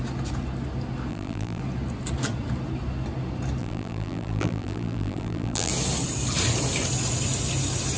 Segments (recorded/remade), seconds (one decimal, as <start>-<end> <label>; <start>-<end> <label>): 0.0-1.1 recorded; 1.1-1.6 remade; 1.6-3.6 recorded; 3.6-5.7 remade; 5.7-8.0 recorded